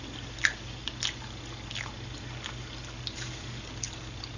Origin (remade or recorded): recorded